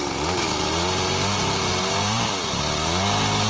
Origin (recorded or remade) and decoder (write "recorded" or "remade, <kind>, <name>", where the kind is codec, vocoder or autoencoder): remade, vocoder, BigVGAN v2